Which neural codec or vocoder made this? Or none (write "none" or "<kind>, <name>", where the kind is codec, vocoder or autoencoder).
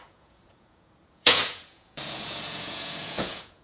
vocoder, Vocos